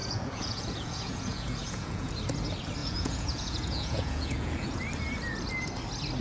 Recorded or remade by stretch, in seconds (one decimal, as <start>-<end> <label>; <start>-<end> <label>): 0.0-2.1 remade; 2.1-2.8 recorded; 2.8-4.8 remade; 4.8-6.2 recorded